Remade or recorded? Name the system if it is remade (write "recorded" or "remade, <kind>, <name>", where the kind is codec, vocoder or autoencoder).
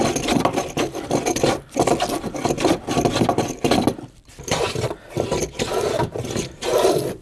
remade, vocoder, BigVGAN v2